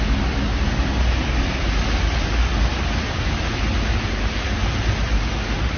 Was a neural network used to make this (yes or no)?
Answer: no